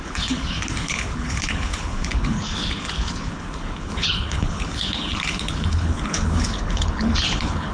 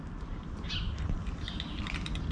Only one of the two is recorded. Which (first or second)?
second